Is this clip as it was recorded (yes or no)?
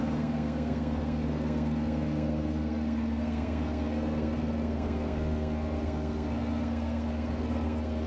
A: no